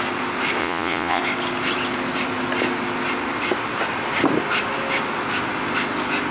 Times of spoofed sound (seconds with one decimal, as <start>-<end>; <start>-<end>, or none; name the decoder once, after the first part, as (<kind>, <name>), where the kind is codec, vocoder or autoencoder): 0.6-1.2 (vocoder, Vocos)